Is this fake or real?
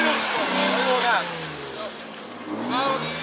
real